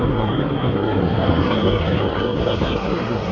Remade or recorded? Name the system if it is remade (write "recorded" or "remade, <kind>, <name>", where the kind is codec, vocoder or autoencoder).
remade, codec, SNAC